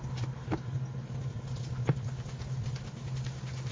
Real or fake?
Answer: real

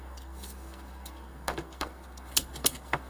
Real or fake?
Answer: fake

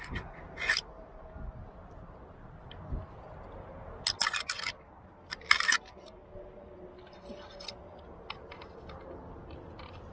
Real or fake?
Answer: real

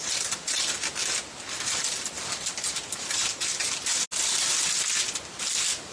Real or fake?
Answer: real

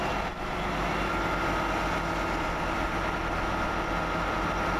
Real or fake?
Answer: real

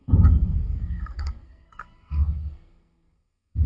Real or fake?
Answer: fake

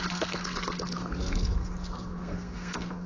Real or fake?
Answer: fake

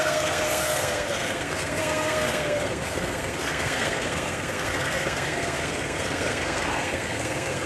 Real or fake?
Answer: fake